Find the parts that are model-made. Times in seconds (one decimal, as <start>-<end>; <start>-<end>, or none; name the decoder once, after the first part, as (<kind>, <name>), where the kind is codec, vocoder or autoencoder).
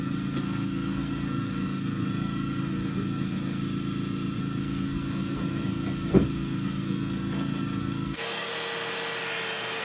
0.0-3.6 (codec, SNAC); 4.4-8.5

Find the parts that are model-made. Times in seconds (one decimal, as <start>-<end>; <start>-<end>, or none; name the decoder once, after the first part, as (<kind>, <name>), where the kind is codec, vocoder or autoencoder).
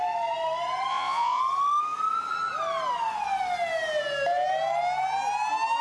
0.9-1.4 (vocoder, Vocos)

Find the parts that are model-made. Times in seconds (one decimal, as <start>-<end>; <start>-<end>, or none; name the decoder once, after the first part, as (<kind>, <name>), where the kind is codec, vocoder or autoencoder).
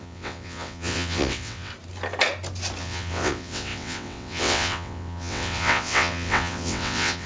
0.0-1.7 (vocoder, WaveNeXt); 2.8-7.3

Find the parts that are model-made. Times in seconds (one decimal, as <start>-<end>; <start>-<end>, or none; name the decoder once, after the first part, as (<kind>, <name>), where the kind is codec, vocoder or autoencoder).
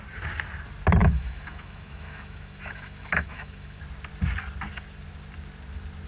1.0-3.8 (autoencoder, DAC-VAE)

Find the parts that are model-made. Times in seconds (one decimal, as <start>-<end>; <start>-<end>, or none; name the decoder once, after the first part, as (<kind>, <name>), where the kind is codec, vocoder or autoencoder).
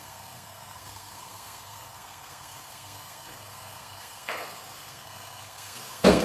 0.0-6.2 (codec, SNAC)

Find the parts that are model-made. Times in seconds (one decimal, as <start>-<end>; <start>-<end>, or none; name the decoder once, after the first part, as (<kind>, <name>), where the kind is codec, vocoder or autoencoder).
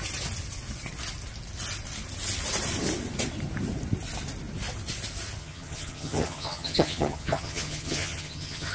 5.4-8.7 (vocoder, HiFi-GAN)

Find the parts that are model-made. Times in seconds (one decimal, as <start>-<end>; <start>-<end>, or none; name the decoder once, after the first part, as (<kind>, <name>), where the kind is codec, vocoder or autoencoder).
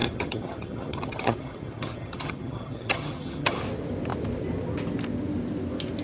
0.0-3.6 (vocoder, HiFi-GAN)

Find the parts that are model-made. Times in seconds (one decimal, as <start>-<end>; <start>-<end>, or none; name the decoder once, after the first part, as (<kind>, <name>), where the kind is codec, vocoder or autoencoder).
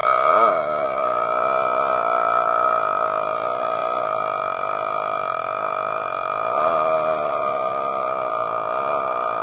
none